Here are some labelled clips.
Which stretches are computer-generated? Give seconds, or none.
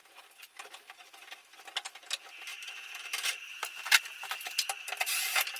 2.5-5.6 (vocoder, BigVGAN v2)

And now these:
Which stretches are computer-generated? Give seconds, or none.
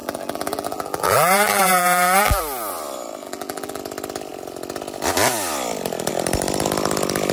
0.0-2.4 (vocoder, BigVGAN v2); 3.2-3.8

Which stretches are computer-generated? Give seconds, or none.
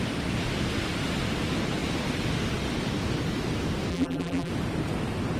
3.9-4.5 (vocoder, BigVGAN v2)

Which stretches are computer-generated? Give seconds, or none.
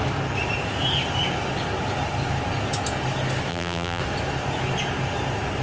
3.5-4.0 (vocoder, BigVGAN v2)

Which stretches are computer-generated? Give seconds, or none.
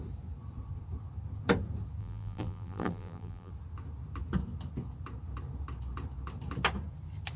2.0-3.5 (vocoder, BigVGAN v2)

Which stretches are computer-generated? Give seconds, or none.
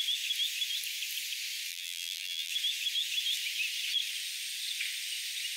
1.7-2.5 (vocoder, BigVGAN v2)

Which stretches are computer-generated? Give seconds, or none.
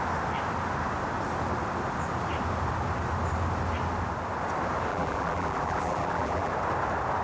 4.9-6.5 (vocoder, BigVGAN v2)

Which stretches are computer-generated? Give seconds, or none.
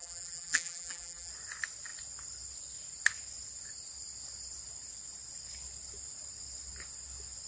0.0-1.3 (vocoder, BigVGAN v2)